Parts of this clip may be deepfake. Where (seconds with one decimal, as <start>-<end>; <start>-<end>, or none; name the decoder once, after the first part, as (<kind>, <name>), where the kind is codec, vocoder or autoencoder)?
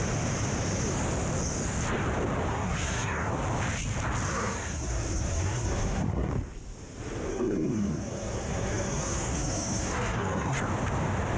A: 2.5-3.3 (codec, SNAC); 4.3-6.3; 7.3-10.6